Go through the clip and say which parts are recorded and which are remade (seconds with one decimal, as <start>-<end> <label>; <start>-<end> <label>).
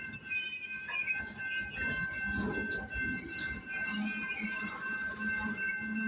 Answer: 0.0-4.2 recorded; 4.2-4.8 remade; 4.8-6.1 recorded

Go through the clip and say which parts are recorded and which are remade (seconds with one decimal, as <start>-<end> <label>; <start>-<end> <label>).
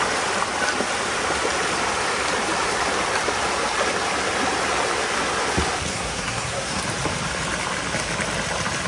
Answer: 0.0-5.9 recorded; 5.9-6.8 remade; 6.8-8.9 recorded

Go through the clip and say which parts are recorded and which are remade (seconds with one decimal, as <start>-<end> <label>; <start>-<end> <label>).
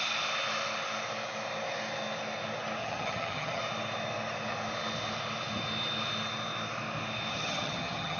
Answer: 0.0-2.8 recorded; 2.8-3.6 remade; 3.6-7.3 recorded; 7.3-8.2 remade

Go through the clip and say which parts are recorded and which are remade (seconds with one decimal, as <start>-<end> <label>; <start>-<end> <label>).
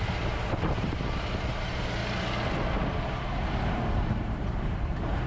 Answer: 0.0-2.0 remade; 2.0-3.0 recorded; 3.0-5.3 remade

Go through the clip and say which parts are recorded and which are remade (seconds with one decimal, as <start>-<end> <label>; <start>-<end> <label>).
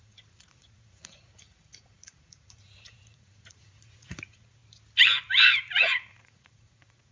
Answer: 0.0-4.6 remade; 4.6-5.3 recorded; 5.3-7.1 remade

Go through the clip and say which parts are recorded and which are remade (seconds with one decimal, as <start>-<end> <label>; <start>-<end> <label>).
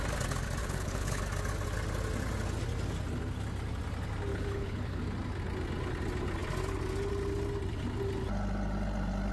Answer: 0.0-0.6 recorded; 0.6-1.2 remade; 1.2-4.3 recorded; 4.3-5.0 remade; 5.0-9.3 recorded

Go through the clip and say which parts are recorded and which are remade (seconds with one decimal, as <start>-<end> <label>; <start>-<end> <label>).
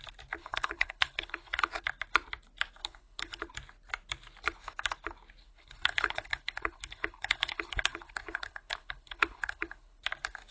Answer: 0.0-0.4 recorded; 0.4-1.8 remade; 1.8-2.8 recorded; 2.8-3.4 remade; 3.4-5.4 recorded; 5.4-10.0 remade; 10.0-10.5 recorded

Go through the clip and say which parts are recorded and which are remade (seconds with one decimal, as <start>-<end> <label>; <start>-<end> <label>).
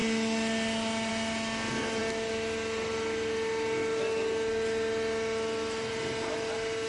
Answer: 0.0-6.9 recorded